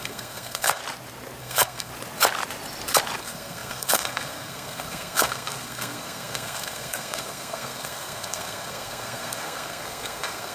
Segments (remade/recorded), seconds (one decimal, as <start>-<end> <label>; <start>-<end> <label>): 0.0-0.8 remade; 0.8-1.4 recorded; 1.4-1.9 remade; 1.9-3.2 recorded; 3.2-10.5 remade